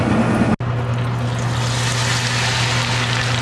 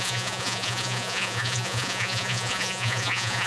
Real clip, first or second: first